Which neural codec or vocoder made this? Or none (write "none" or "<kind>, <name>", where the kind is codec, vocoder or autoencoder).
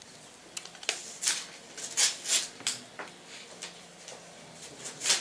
none